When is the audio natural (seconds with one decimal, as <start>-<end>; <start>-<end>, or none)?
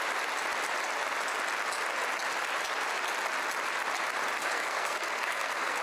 0.0-4.4